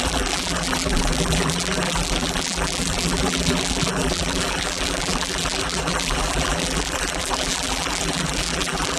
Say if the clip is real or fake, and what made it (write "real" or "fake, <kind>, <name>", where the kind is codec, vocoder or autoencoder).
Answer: fake, vocoder, BigVGAN v2